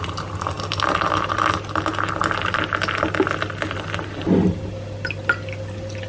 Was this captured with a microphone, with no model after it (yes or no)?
yes